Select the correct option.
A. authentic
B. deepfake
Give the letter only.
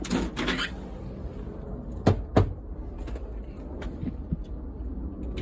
A